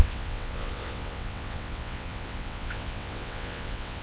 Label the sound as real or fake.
fake